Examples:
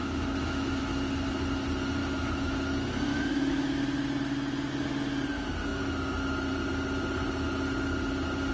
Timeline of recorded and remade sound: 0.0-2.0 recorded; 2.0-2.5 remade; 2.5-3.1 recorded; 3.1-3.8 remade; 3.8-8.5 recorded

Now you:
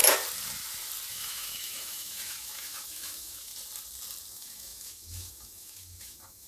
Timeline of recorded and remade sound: 0.0-1.1 recorded; 1.1-3.5 remade; 3.5-4.3 recorded; 4.3-6.5 remade

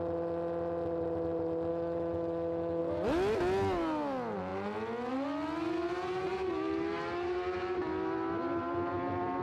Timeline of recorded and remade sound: 0.0-1.7 recorded; 1.7-2.8 remade; 2.8-9.4 recorded

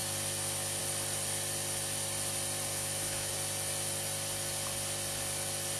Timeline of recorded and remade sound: 0.0-2.7 recorded; 2.7-3.3 remade; 3.3-5.8 recorded

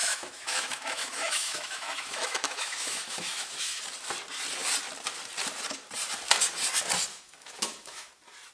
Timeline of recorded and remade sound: 0.0-3.8 remade; 3.8-7.1 recorded; 7.1-8.1 remade; 8.1-8.5 recorded